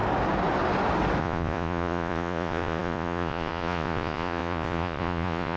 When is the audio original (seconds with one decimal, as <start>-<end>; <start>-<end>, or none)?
0.0-1.2